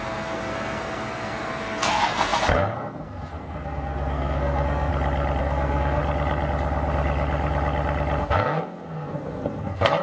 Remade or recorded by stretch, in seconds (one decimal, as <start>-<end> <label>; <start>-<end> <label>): 0.0-4.9 remade; 4.9-5.4 recorded; 5.4-6.0 remade; 6.0-8.2 recorded; 8.2-10.0 remade